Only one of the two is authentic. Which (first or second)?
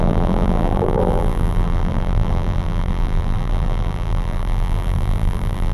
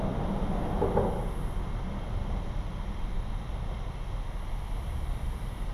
second